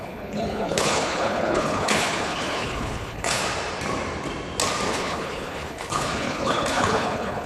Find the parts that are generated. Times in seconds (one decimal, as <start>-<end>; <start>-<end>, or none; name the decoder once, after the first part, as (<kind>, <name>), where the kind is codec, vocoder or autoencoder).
0.0-3.4 (codec, HILCodec); 4.9-7.5